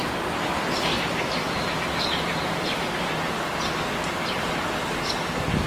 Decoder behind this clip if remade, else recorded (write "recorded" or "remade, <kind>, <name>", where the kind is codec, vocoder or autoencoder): recorded